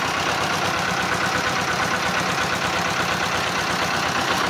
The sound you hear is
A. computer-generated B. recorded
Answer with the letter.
B